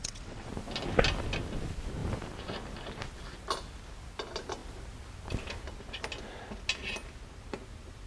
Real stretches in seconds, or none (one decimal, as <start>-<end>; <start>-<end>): 0.5-8.1